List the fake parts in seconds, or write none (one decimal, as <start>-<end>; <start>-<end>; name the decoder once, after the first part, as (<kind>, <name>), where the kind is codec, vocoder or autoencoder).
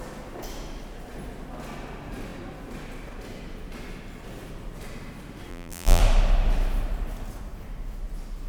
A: 5.5-6.0 (vocoder, BigVGAN v2)